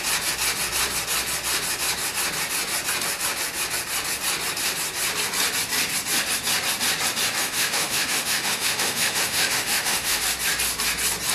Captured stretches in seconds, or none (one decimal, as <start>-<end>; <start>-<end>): 0.0-7.4; 10.2-11.3